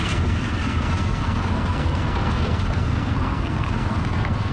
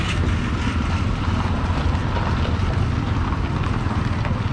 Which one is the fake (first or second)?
first